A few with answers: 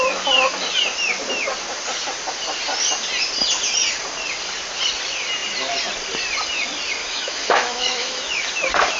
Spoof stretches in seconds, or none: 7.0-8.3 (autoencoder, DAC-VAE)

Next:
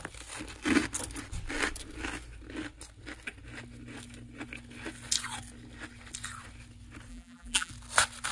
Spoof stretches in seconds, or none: 7.1-7.7 (vocoder, BigVGAN v2)

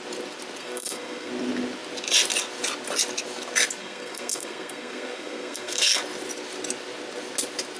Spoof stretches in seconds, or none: 0.6-1.3 (codec, SNAC); 3.8-6.0

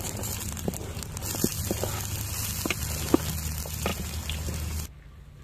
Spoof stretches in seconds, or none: none

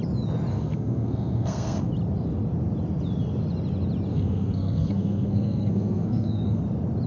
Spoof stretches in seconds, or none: 0.5-1.9 (codec, SNAC); 4.1-6.6

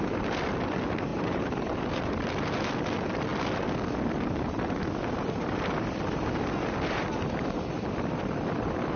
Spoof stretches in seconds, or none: 1.1-1.8 (vocoder, BigVGAN v2)